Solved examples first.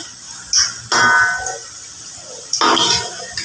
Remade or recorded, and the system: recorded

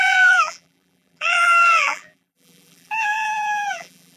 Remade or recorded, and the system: remade, vocoder, BigVGAN v2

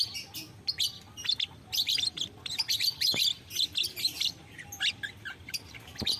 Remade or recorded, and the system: recorded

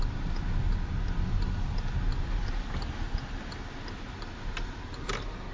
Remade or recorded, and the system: recorded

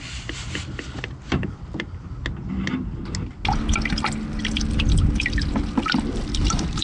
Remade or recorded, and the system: recorded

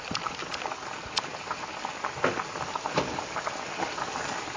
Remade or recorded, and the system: recorded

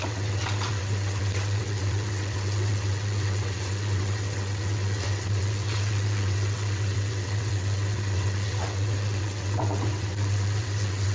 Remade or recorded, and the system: remade, vocoder, WaveNeXt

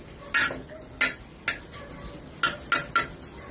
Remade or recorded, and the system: recorded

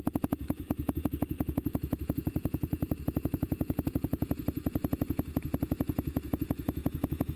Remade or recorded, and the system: remade, vocoder, Vocos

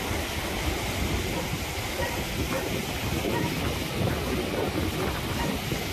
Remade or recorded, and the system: recorded